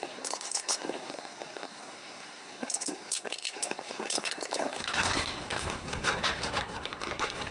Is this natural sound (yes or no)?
no